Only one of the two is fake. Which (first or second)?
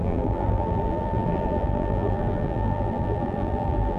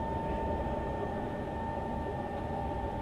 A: first